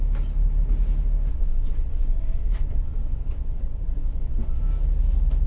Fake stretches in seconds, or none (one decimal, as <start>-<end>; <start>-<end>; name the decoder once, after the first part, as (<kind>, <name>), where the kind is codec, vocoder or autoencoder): 1.3-4.6 (vocoder, WaveNeXt)